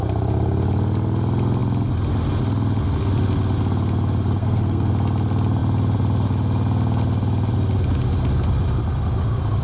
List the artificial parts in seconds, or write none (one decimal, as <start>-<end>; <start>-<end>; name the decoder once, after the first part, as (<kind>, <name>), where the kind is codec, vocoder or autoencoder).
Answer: 4.4-4.9 (codec, SNAC)